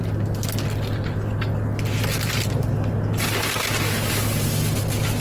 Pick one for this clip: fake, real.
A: real